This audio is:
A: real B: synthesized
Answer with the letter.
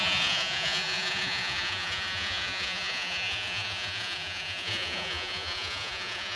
B